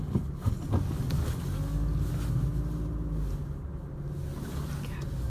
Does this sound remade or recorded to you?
recorded